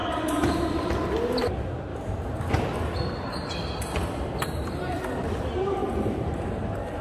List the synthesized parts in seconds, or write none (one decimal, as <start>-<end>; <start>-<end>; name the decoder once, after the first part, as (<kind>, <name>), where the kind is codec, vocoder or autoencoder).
0.0-0.8 (vocoder, BigVGAN v2); 1.9-2.5; 5.8-6.4